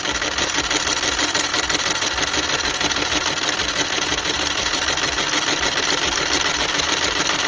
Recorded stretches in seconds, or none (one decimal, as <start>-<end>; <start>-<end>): 0.0-7.5